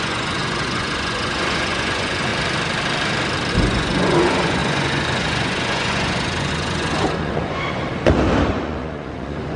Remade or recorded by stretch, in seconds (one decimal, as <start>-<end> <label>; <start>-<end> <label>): 0.0-2.3 remade; 2.3-3.5 recorded; 3.5-7.9 remade; 7.9-8.5 recorded; 8.5-9.6 remade